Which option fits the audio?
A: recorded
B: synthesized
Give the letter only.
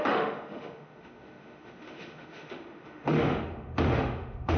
B